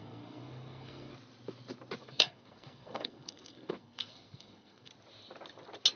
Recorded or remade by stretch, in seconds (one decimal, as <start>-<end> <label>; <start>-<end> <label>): 0.0-1.1 remade; 1.1-2.0 recorded; 2.0-4.9 remade; 4.9-6.0 recorded